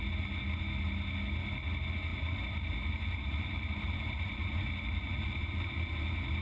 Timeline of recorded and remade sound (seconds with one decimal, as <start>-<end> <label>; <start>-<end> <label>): 0.0-2.1 recorded; 2.1-5.9 remade; 5.9-6.4 recorded